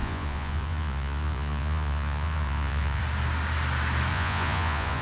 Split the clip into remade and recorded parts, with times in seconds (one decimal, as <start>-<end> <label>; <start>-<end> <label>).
0.0-3.0 remade; 3.0-4.1 recorded; 4.1-5.0 remade